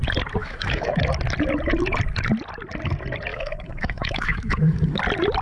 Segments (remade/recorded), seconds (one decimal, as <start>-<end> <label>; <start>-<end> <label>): 0.0-0.4 recorded; 0.4-1.0 remade; 1.0-3.3 recorded; 3.3-5.0 remade; 5.0-5.4 recorded